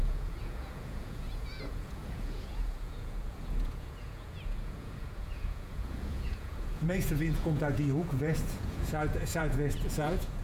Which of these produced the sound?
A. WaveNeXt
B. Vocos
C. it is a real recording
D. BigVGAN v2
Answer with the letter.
B